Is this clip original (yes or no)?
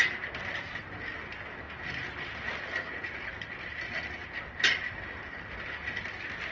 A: yes